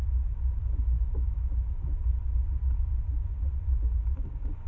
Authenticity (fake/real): real